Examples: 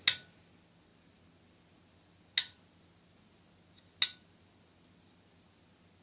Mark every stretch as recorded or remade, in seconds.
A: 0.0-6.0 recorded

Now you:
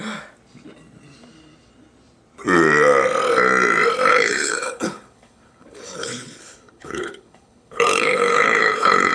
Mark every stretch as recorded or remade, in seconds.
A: 0.0-4.1 recorded; 4.1-9.1 remade

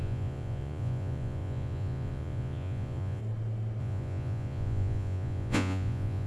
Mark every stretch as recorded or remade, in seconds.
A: 0.0-3.2 remade; 3.2-3.8 recorded; 3.8-6.3 remade

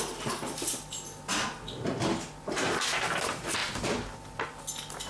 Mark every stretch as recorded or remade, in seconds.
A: 0.0-5.1 recorded

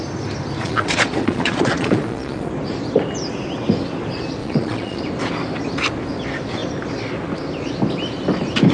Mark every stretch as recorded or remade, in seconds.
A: 0.0-0.6 recorded; 0.6-2.5 remade; 2.5-4.4 recorded; 4.4-5.0 remade; 5.0-8.7 recorded

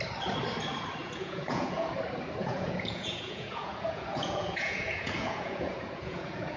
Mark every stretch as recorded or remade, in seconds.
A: 0.0-1.0 recorded; 1.0-1.9 remade; 1.9-2.4 recorded; 2.4-6.6 remade

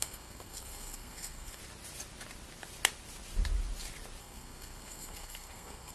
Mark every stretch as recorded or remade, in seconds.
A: 0.0-1.6 remade; 1.6-4.2 recorded; 4.2-5.9 remade